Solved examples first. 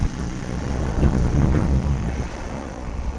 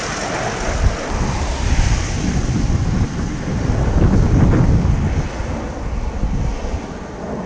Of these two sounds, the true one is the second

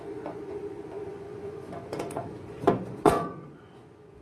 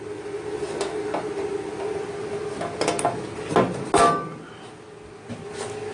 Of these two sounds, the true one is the second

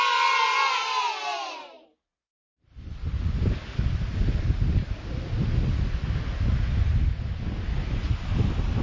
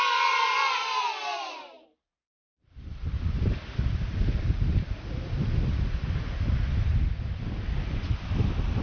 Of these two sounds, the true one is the first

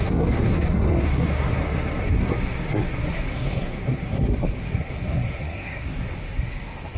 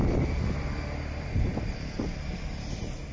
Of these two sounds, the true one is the second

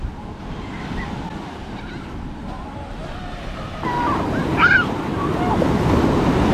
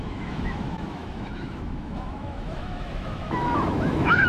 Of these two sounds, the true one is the first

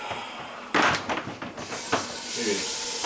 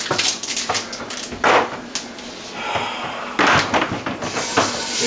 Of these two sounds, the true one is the second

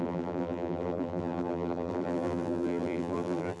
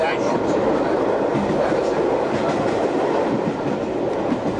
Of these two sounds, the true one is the second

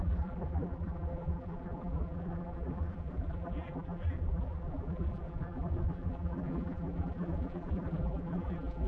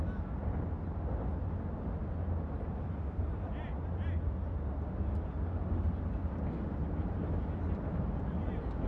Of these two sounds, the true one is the second